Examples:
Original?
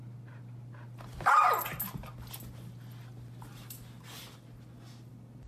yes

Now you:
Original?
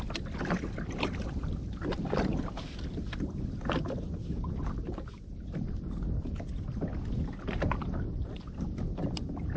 yes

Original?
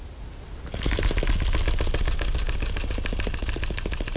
yes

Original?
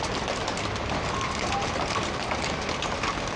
yes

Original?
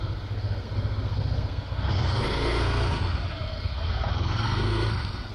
no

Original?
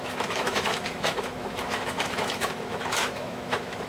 no